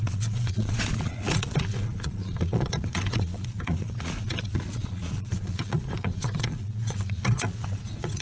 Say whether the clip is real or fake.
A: fake